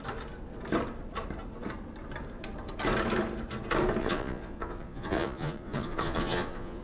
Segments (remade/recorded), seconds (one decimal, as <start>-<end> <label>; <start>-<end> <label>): 0.0-4.0 recorded; 4.0-6.8 remade